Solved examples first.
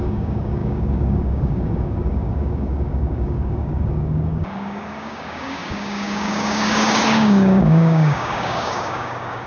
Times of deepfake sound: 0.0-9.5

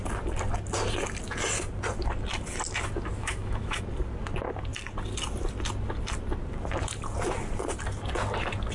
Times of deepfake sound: 3.2-3.8

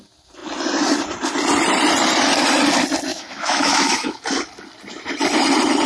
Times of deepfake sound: 3.1-4.2